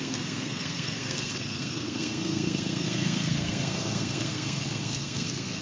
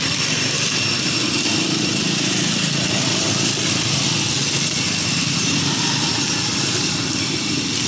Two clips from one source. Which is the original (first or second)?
second